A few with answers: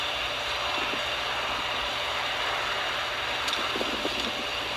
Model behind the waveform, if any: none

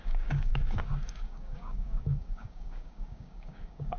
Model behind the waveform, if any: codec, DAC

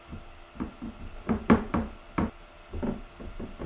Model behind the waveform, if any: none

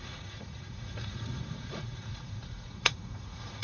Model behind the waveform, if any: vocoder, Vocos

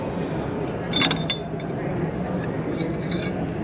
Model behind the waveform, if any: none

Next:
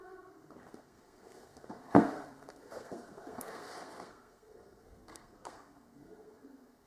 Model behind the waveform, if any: codec, SNAC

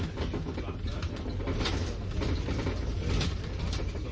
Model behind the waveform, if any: none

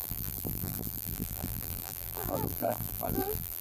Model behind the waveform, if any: vocoder, BigVGAN v2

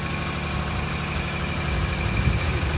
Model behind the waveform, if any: none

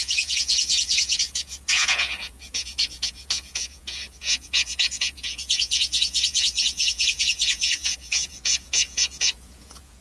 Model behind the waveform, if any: vocoder, Vocos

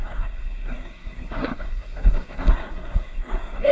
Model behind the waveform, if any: codec, SNAC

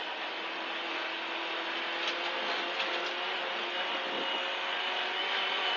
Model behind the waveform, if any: none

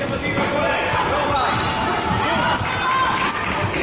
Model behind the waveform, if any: none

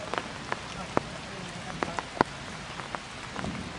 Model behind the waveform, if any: none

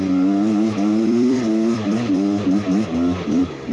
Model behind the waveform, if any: vocoder, BigVGAN v2